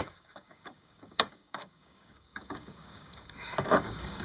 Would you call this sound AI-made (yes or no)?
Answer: yes